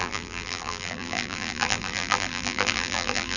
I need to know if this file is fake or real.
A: fake